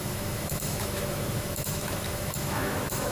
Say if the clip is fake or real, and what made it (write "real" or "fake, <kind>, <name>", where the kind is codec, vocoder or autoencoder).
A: fake, autoencoder, DAC-VAE